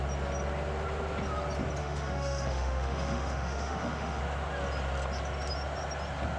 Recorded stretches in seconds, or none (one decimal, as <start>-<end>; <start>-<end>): 0.0-1.8; 4.2-6.4